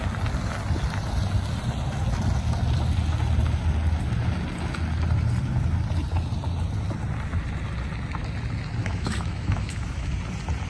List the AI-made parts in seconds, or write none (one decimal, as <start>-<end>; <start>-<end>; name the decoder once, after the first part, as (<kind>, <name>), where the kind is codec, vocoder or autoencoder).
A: 8.8-10.1 (autoencoder, DAC-VAE)